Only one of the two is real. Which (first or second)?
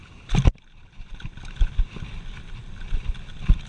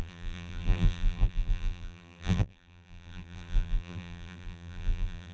first